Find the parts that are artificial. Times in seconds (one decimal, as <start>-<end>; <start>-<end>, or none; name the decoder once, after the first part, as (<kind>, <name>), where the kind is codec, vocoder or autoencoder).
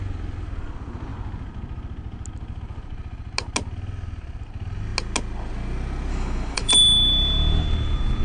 6.1-6.7 (autoencoder, DAC-VAE)